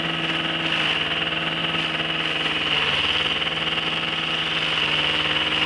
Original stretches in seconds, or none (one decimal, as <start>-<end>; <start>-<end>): 0.0-5.7